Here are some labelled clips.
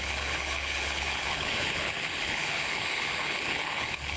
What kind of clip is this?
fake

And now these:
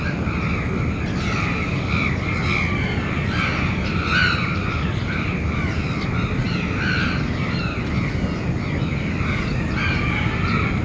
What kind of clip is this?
real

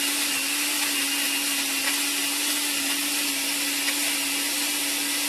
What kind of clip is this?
real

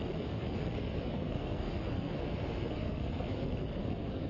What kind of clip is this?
fake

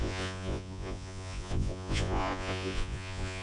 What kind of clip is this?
fake